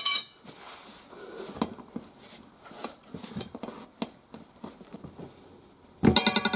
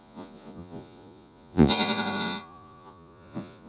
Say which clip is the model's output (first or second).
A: second